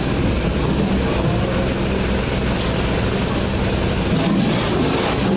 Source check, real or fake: real